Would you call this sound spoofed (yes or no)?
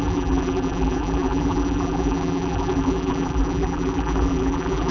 yes